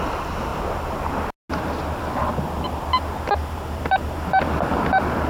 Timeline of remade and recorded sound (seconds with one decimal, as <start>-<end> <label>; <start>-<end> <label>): 0.0-3.4 recorded; 3.4-4.3 remade; 4.3-5.3 recorded